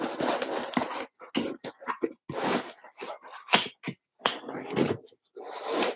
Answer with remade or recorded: recorded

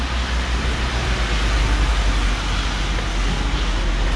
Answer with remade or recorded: recorded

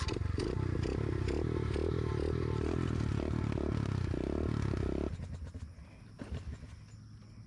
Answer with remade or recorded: recorded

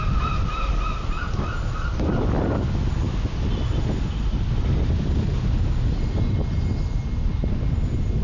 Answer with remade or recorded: recorded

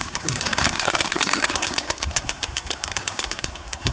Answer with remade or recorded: remade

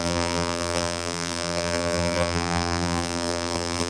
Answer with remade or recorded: remade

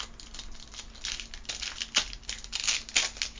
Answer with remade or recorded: recorded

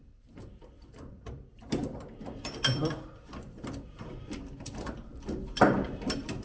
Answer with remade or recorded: remade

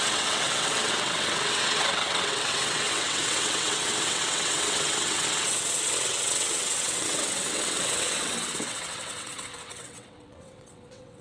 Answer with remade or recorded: remade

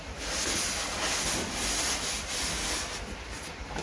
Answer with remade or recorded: recorded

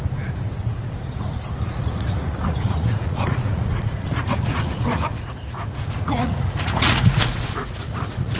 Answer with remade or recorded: remade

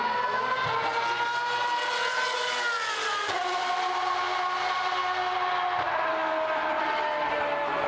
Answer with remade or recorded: recorded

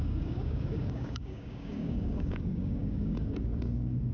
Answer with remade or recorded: remade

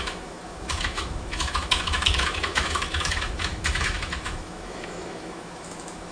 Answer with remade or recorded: remade